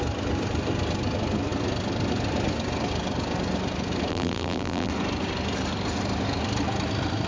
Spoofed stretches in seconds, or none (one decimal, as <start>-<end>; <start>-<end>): 4.1-4.9